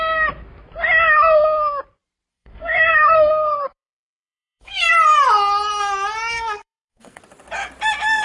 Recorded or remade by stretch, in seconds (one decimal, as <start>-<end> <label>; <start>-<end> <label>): 0.0-2.3 recorded; 2.3-4.9 remade; 4.9-6.3 recorded; 6.3-7.2 remade; 7.2-8.2 recorded